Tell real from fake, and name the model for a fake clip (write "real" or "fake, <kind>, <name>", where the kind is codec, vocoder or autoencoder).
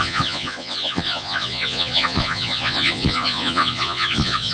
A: fake, vocoder, Vocos